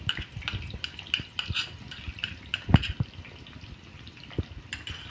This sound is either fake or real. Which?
real